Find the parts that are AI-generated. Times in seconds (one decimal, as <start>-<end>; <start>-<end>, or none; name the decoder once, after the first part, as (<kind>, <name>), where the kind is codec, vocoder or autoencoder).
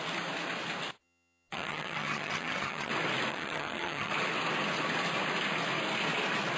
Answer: 1.0-2.9 (vocoder, HiFi-GAN); 3.3-4.1